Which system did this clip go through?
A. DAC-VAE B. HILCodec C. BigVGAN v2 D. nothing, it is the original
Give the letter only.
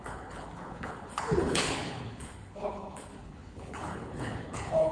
B